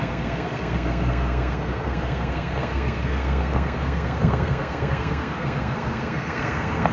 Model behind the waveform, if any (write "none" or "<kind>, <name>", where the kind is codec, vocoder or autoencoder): codec, SNAC